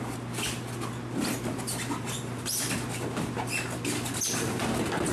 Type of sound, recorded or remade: recorded